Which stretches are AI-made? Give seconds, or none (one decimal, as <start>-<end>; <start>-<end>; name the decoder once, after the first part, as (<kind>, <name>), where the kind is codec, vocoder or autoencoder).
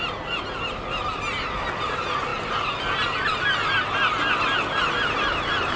none